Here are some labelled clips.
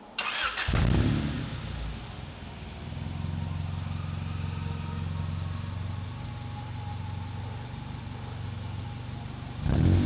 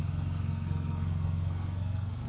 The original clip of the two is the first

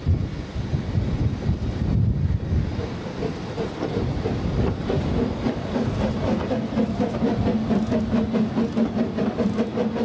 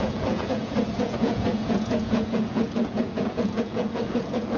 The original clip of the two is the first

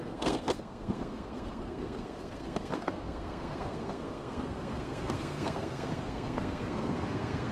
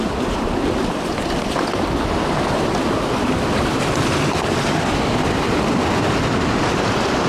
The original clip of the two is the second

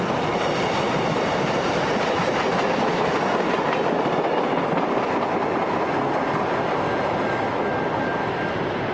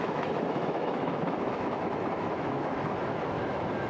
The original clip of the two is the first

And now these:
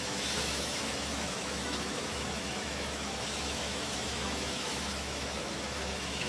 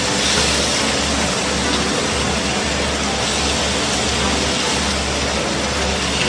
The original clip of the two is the second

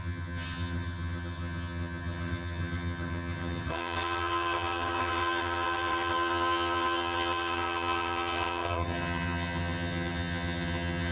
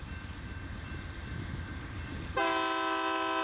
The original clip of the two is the second